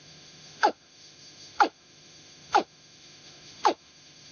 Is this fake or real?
fake